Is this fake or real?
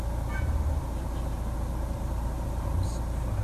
real